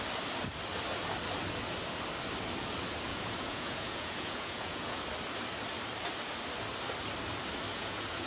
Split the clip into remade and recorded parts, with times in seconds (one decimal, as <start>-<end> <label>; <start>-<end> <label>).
0.0-3.1 recorded; 3.1-5.0 remade; 5.0-7.7 recorded; 7.7-8.3 remade